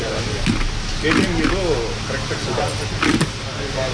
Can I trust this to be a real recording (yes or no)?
yes